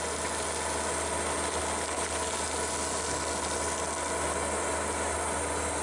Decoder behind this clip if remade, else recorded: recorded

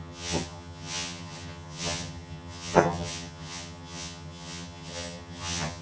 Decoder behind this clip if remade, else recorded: remade, vocoder, HiFi-GAN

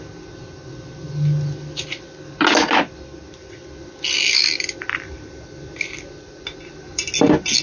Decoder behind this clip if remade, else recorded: recorded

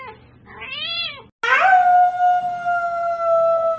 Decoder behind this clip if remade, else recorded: recorded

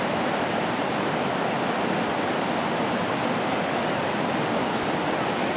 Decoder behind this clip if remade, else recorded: recorded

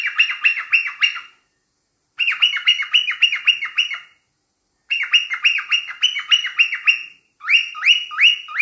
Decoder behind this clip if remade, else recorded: recorded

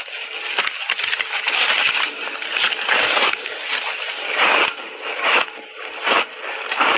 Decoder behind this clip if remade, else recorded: remade, vocoder, BigVGAN v2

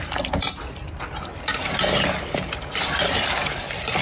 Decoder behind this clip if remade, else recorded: recorded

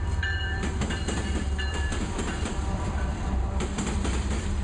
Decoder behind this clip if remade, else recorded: remade, vocoder, BigVGAN v2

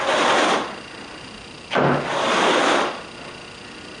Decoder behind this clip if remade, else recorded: recorded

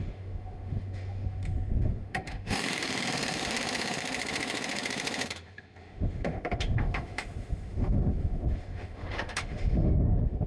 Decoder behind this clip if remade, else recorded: remade, autoencoder, DAC-VAE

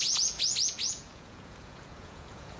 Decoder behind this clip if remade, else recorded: remade, vocoder, Vocos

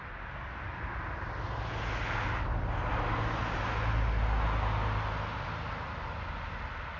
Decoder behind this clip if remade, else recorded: recorded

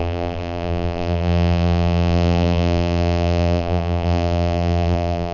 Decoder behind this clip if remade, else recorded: remade, vocoder, BigVGAN v2